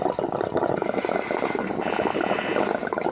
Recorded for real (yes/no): yes